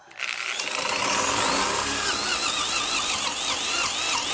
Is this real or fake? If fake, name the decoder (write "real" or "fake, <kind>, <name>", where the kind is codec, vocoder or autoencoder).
real